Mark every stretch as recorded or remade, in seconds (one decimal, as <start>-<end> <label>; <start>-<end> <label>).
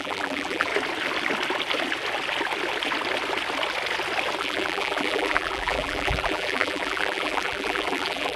0.0-0.7 remade; 0.7-4.4 recorded; 4.4-8.4 remade